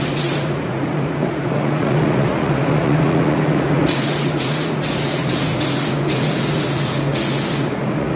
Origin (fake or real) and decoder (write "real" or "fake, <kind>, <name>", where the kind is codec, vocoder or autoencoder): fake, vocoder, Vocos